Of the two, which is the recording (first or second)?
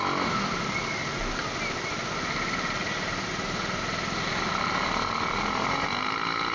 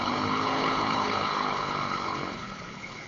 first